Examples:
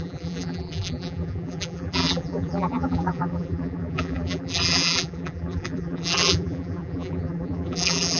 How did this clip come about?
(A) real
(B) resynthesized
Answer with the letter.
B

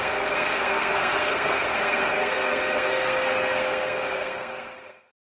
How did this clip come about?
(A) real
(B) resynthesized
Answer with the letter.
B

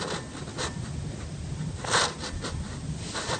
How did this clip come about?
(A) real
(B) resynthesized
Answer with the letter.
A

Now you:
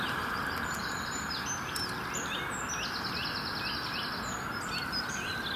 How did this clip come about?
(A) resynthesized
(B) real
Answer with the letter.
B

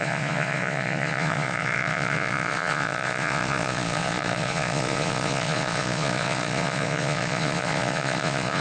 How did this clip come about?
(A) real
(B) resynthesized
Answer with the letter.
B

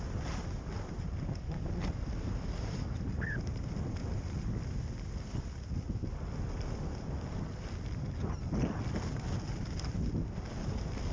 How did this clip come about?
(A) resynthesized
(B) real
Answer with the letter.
B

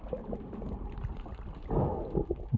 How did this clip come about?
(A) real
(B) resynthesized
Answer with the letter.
A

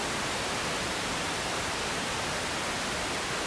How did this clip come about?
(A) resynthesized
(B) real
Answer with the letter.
B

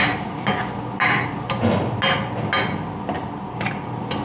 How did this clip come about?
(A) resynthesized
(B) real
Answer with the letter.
B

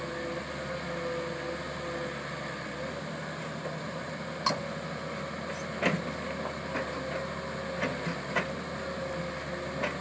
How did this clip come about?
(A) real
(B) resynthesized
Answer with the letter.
A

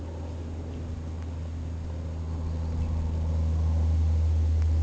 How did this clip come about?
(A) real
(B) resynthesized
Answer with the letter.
A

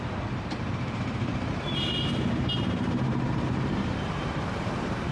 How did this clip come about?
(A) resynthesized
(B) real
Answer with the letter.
A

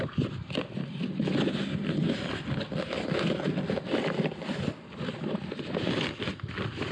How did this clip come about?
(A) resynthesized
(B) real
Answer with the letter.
B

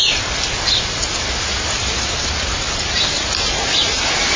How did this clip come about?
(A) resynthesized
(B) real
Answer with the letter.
B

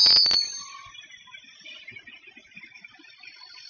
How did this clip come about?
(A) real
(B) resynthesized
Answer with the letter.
A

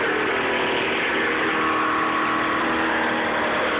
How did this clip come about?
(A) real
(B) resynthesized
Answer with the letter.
A